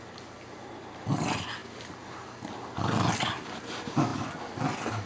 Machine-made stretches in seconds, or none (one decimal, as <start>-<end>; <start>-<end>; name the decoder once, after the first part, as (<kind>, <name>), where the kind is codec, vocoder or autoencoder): none